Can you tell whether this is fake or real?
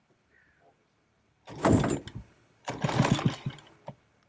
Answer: real